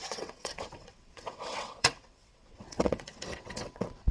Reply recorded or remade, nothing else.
remade